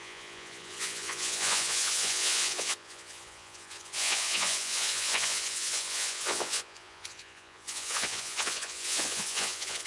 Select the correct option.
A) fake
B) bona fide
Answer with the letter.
A